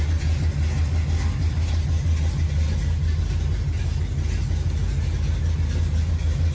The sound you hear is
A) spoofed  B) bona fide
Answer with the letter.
B